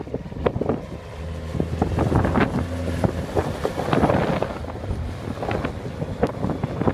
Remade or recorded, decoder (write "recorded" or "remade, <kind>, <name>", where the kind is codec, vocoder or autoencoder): recorded